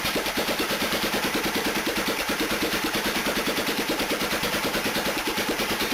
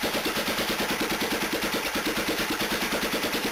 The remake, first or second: first